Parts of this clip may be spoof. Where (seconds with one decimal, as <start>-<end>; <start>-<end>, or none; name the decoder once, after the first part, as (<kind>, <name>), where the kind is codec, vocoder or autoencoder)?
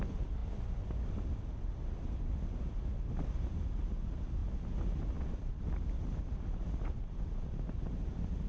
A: none